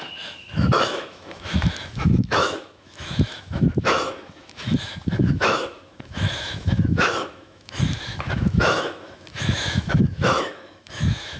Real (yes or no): no